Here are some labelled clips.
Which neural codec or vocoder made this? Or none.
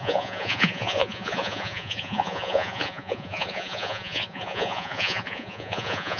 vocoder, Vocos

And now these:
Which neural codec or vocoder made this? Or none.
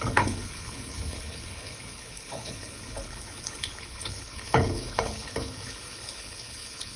codec, HILCodec